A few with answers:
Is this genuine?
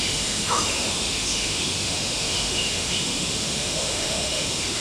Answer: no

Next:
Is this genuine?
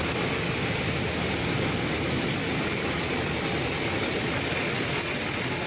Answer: yes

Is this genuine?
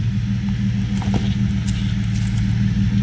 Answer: yes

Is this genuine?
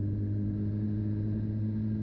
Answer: yes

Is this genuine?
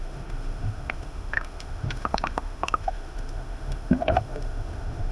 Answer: no